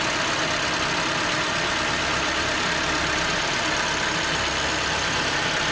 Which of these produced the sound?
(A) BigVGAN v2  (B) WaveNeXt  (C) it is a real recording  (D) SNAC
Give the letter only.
C